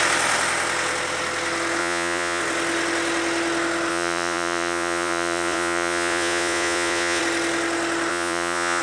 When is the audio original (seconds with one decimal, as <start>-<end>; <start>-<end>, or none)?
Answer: 0.0-1.8; 2.4-3.9; 7.2-8.1